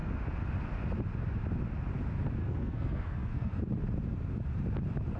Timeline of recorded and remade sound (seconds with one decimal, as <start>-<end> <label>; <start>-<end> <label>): 0.0-2.4 recorded; 2.4-3.6 remade; 3.6-5.2 recorded